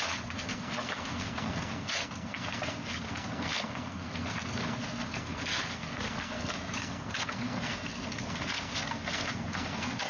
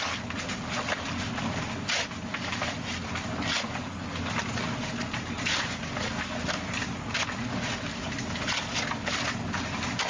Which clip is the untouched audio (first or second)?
second